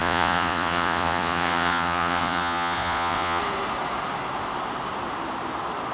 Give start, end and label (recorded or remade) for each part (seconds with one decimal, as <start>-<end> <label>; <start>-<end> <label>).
0.0-3.4 remade; 3.4-5.9 recorded